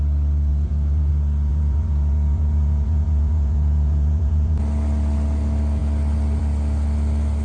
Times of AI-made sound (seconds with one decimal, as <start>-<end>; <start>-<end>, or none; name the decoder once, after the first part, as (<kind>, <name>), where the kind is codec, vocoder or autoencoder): 0.5-1.1 (vocoder, Vocos); 1.5-4.6